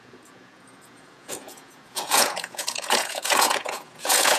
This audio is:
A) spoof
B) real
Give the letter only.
A